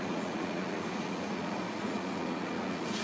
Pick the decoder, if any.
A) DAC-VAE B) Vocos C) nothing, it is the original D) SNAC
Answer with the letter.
B